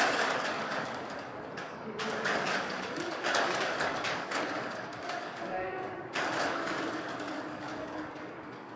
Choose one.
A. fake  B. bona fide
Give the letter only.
A